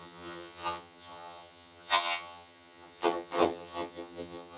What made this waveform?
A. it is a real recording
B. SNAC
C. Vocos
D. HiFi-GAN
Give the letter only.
D